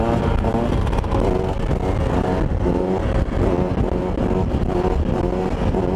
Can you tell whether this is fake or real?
real